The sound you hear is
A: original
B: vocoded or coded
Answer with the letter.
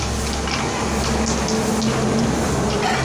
A